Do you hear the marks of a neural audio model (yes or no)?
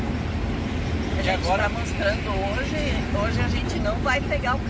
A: no